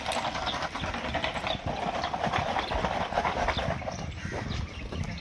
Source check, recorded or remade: recorded